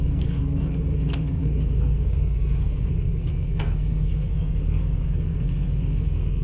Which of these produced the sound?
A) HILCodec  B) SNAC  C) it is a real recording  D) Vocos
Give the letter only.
B